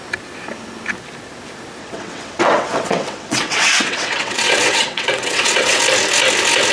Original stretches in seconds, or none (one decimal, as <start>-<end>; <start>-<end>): 0.0-1.8; 5.8-6.7